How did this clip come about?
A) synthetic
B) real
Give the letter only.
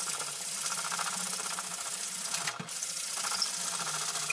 A